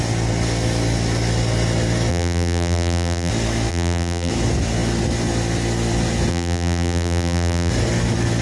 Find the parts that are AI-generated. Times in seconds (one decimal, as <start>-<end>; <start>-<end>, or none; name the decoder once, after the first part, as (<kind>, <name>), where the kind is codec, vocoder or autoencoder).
2.1-3.3 (vocoder, BigVGAN v2); 3.7-4.3; 6.3-7.7